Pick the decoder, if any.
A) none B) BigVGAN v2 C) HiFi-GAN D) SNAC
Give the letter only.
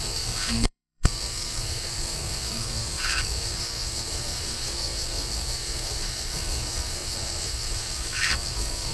D